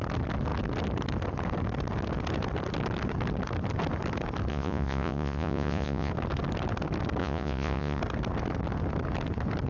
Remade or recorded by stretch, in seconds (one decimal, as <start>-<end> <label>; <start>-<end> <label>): 0.0-4.5 recorded; 4.5-6.1 remade; 6.1-7.2 recorded; 7.2-8.0 remade; 8.0-9.7 recorded